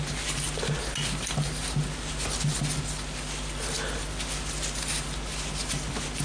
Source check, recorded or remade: recorded